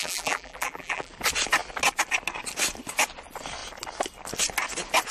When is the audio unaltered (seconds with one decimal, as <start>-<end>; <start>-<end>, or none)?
1.1-5.1